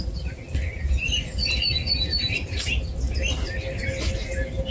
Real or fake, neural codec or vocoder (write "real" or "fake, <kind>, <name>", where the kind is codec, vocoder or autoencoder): real